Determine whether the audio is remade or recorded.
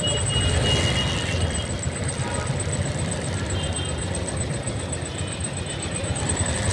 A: remade